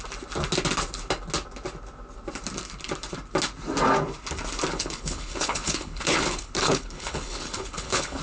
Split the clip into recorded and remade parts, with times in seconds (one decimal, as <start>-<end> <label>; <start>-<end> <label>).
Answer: 0.0-4.7 recorded; 4.7-8.2 remade